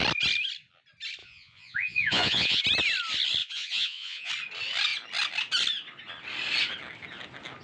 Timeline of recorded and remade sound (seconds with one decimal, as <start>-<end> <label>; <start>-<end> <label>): 0.0-1.2 recorded; 1.2-2.6 remade; 2.6-3.4 recorded; 3.4-4.3 remade; 4.3-7.6 recorded